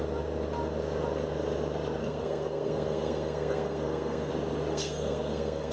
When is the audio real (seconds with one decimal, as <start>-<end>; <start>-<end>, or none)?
0.0-2.0; 4.3-4.7